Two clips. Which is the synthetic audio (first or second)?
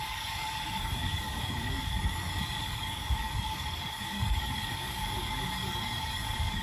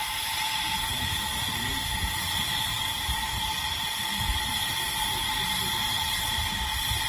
first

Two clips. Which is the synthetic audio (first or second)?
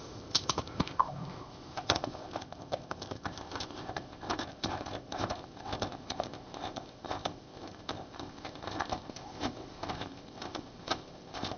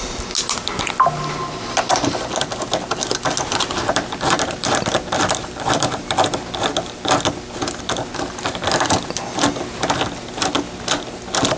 first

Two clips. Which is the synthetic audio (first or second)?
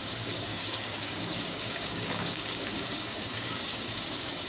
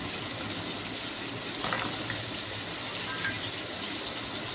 first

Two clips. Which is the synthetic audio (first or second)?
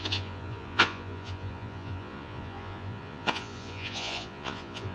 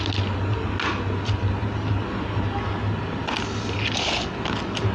first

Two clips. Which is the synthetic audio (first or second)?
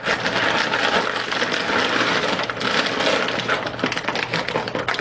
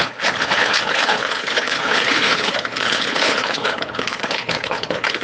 second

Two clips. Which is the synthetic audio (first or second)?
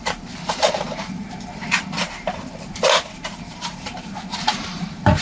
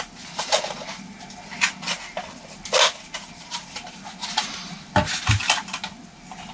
first